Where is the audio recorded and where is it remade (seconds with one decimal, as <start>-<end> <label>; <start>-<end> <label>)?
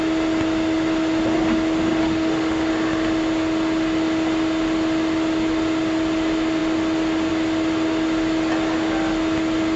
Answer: 0.0-2.0 recorded; 2.0-2.7 remade; 2.7-9.8 recorded